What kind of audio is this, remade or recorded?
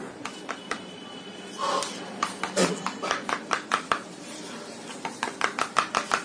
recorded